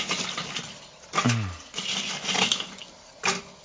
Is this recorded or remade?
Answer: recorded